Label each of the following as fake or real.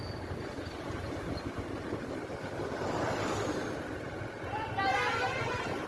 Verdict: real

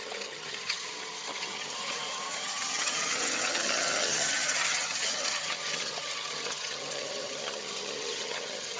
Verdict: fake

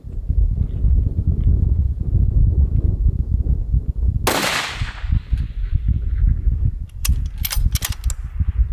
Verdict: real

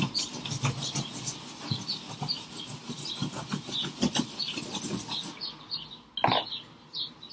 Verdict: real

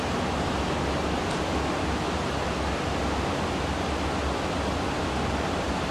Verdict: real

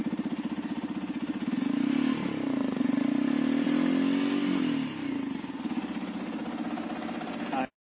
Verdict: real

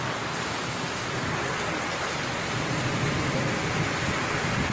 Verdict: real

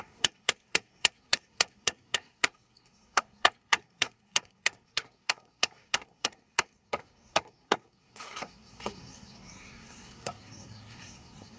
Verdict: fake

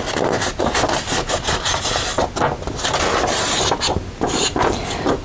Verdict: real